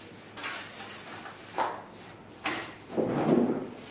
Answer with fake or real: real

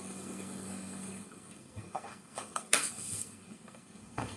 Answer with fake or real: fake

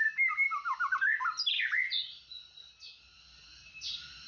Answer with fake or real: real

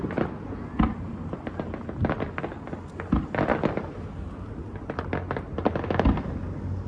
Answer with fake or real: real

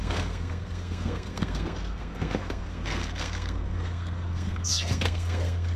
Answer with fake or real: fake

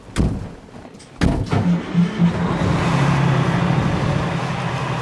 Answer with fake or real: real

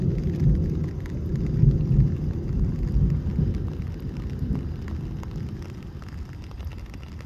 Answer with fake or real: real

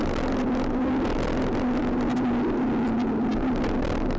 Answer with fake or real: real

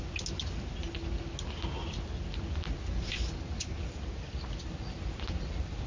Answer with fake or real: real